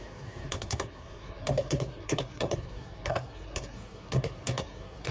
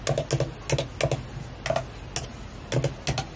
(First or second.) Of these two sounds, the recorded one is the second